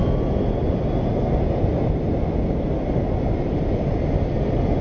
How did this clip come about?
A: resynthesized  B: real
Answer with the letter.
B